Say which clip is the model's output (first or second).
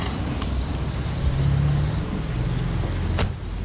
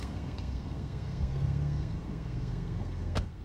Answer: second